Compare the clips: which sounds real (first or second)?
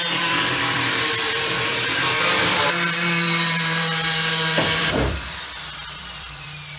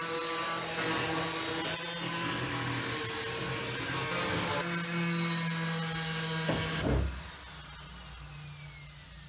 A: second